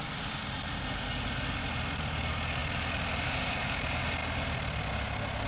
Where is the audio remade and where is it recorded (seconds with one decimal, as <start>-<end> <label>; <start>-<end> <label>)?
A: 0.0-2.6 recorded; 2.6-3.2 remade; 3.2-5.5 recorded